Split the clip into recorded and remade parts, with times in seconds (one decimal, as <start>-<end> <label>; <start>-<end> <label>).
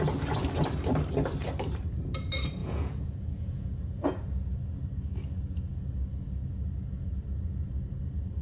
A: 0.0-2.6 recorded; 2.6-4.1 remade; 4.1-8.4 recorded